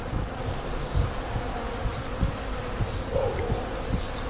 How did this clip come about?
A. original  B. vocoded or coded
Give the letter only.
A